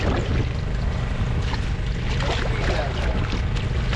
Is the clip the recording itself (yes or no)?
yes